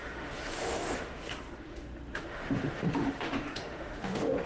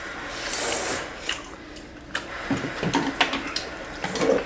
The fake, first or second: first